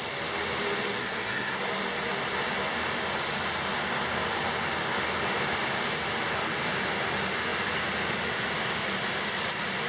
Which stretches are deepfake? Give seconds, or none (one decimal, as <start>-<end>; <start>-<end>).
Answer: 1.0-1.6